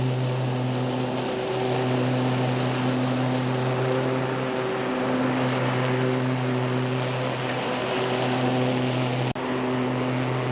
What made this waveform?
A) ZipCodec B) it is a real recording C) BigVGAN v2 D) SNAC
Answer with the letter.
B